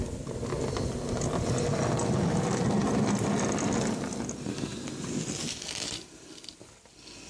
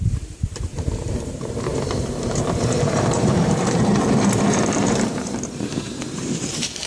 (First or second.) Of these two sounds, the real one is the first